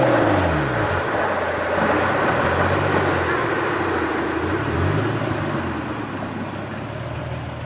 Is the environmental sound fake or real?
real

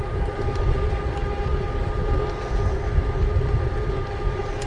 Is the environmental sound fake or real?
real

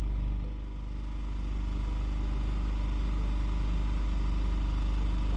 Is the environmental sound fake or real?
real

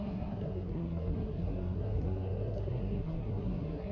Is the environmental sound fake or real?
fake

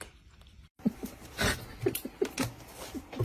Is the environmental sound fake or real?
real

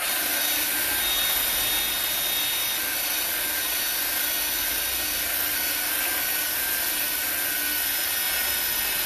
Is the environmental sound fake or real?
real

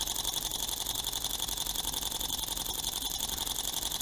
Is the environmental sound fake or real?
real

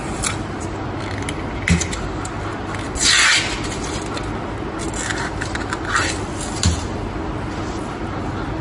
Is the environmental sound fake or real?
real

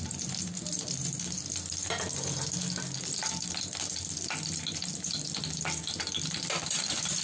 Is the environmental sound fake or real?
real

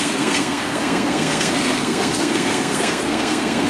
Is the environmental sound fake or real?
fake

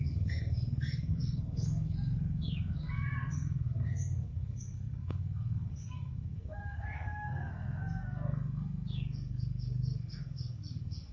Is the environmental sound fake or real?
fake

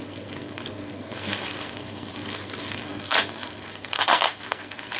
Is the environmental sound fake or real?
fake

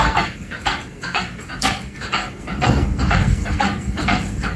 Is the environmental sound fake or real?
fake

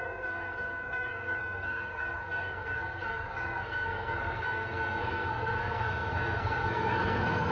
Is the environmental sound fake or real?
fake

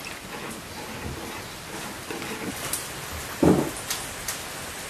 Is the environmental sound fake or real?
real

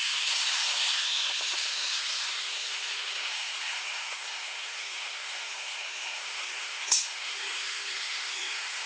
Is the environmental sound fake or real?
fake